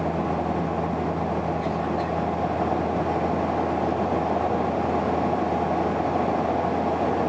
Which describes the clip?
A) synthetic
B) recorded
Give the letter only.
B